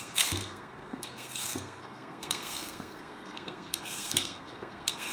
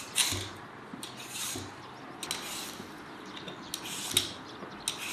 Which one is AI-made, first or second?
first